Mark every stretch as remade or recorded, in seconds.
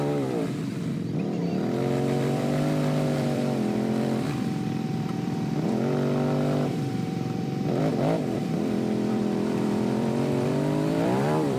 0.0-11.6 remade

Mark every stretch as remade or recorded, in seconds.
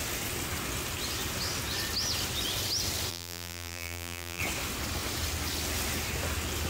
0.0-3.1 recorded; 3.1-4.4 remade; 4.4-6.7 recorded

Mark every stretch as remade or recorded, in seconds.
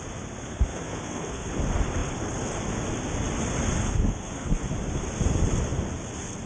0.0-0.4 recorded; 0.4-1.5 remade; 1.5-3.8 recorded; 3.8-4.6 remade; 4.6-6.5 recorded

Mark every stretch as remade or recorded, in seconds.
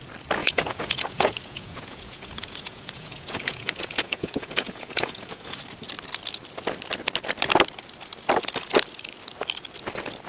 0.0-0.4 recorded; 0.4-5.6 remade; 5.6-10.3 recorded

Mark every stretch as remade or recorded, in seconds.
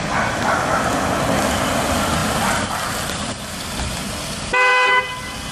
0.0-5.5 recorded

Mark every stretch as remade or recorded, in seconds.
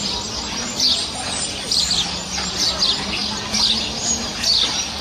0.0-5.0 recorded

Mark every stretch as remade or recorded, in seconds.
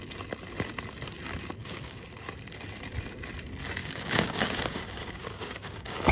0.0-1.6 recorded; 1.6-2.1 remade; 2.1-3.8 recorded; 3.8-6.1 remade